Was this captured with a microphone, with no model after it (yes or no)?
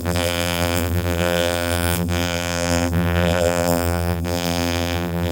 no